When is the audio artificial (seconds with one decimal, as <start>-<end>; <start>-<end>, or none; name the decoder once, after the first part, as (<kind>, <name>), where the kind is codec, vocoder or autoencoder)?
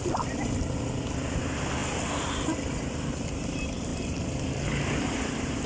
none